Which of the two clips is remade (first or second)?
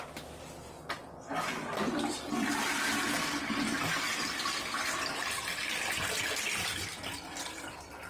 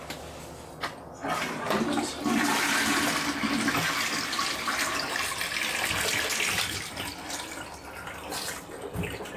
first